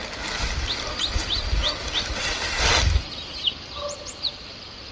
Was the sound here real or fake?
real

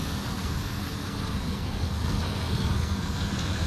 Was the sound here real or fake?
fake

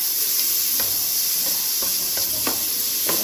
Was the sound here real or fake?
real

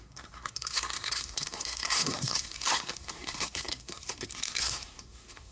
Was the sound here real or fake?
fake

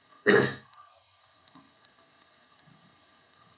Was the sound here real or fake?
fake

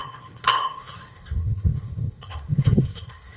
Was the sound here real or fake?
fake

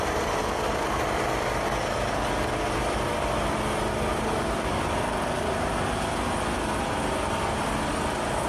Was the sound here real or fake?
real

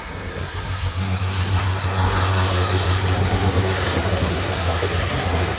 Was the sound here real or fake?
fake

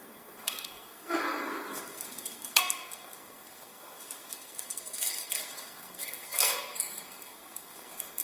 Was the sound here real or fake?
fake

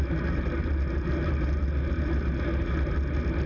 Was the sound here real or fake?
real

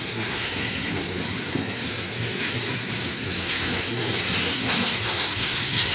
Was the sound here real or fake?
fake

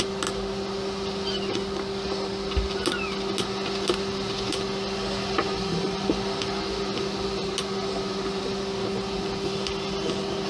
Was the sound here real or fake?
real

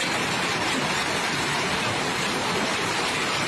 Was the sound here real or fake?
real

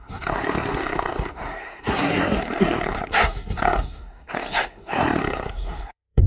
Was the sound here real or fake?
fake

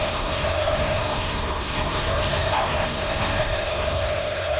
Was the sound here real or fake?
fake